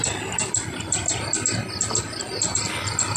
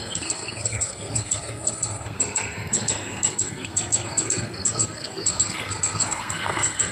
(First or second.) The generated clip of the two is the second